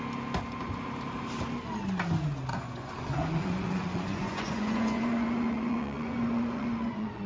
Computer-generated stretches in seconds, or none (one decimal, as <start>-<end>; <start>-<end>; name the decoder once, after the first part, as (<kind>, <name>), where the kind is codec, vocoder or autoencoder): 2.5-7.3 (vocoder, Vocos)